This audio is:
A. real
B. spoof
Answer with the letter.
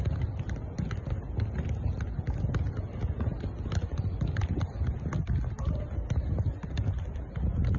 A